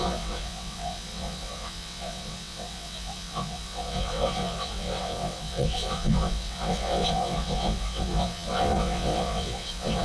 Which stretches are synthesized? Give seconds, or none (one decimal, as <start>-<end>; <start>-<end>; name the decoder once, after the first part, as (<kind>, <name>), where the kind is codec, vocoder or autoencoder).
0.0-10.0 (vocoder, WaveNeXt)